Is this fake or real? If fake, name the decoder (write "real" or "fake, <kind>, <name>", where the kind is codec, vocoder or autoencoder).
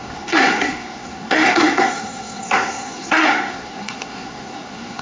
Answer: fake, codec, SNAC